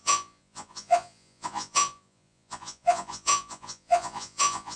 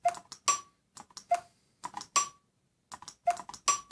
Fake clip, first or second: first